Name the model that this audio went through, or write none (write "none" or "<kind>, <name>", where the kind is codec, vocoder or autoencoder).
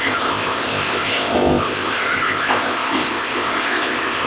codec, ZipCodec